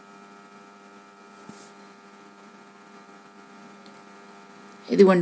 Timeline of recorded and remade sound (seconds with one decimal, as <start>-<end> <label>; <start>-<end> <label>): 0.0-5.2 recorded